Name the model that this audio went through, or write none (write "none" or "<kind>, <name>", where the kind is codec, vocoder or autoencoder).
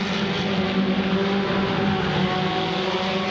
none